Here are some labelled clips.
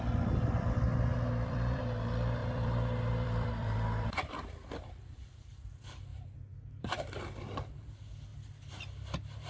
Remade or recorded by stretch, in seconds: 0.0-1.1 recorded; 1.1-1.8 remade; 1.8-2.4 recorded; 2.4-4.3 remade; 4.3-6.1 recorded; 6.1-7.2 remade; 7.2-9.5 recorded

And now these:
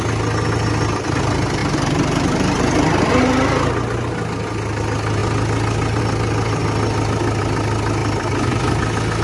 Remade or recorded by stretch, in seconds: 0.0-1.6 recorded; 1.6-3.1 remade; 3.1-9.2 recorded

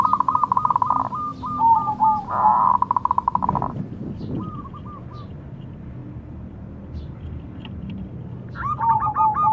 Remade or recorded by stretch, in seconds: 0.0-6.0 recorded; 6.0-8.1 remade; 8.1-9.5 recorded

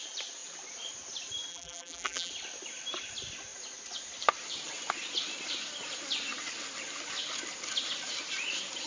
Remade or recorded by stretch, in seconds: 0.0-1.5 recorded; 1.5-2.3 remade; 2.3-8.9 recorded

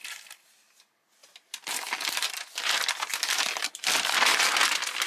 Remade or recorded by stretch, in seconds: 0.0-1.2 recorded; 1.2-2.3 remade; 2.3-3.6 recorded; 3.6-4.2 remade; 4.2-5.1 recorded